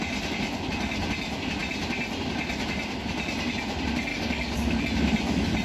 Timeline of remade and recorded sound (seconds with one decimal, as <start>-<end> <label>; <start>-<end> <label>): 0.0-4.1 recorded; 4.1-4.8 remade; 4.8-5.6 recorded